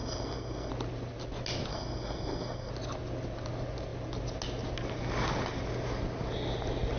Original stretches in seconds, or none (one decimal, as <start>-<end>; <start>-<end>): 0.7-1.7; 2.7-7.0